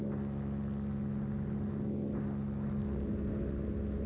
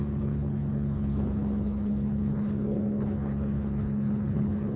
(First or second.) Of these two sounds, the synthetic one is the second